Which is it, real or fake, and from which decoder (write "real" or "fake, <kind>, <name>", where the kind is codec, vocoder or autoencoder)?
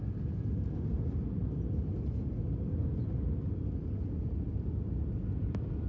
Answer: real